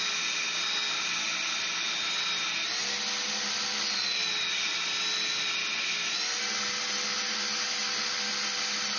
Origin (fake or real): real